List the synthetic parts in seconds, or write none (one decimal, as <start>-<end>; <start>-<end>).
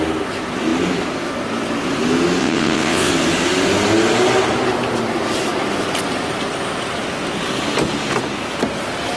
2.4-3.1